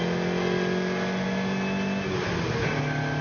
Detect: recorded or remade recorded